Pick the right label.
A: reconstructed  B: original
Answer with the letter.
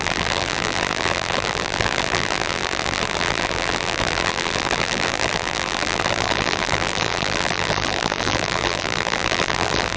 A